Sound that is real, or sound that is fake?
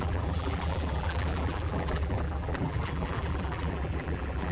fake